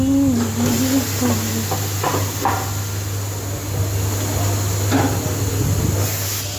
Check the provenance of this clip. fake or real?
real